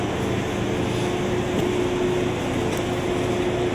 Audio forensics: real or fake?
real